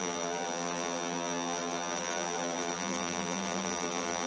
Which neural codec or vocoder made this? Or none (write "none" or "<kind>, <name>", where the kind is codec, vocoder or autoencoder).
vocoder, BigVGAN v2